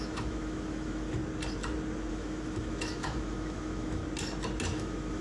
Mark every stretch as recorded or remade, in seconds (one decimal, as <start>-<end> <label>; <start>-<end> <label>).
0.0-1.2 remade; 1.2-2.1 recorded; 2.1-4.0 remade; 4.0-4.7 recorded; 4.7-5.2 remade